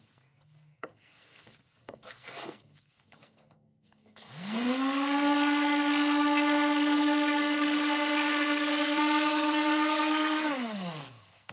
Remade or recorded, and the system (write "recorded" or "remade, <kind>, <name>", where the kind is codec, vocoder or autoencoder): remade, codec, SNAC